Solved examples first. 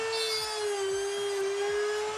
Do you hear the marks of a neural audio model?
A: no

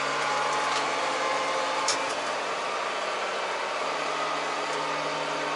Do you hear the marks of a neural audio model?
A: no